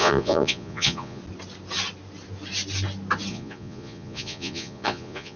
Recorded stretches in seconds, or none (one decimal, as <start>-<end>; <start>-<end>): 1.2-3.3